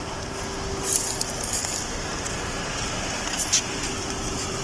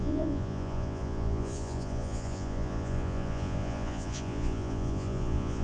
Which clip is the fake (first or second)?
second